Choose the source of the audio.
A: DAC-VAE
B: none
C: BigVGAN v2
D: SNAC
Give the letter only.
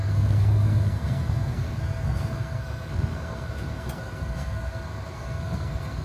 D